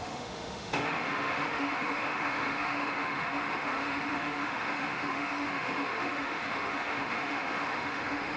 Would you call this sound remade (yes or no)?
yes